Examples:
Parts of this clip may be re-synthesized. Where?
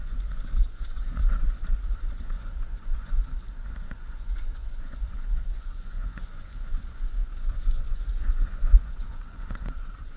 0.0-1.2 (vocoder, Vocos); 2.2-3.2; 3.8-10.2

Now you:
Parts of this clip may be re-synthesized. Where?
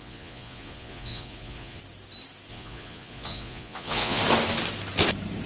0.0-1.8 (vocoder, Vocos); 2.5-4.2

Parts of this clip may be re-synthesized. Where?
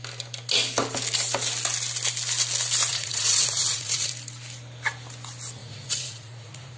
2.9-4.1 (vocoder, Vocos); 5.6-6.8